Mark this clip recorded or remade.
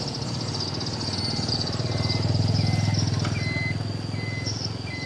recorded